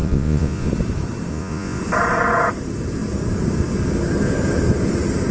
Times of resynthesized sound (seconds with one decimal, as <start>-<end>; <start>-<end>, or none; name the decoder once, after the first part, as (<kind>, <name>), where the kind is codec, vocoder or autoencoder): 0.0-0.7 (vocoder, Vocos); 1.3-1.8